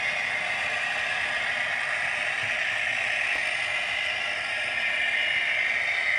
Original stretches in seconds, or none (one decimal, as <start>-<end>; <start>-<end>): 0.0-6.2